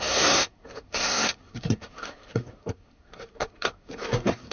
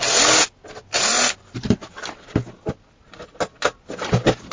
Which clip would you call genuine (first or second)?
second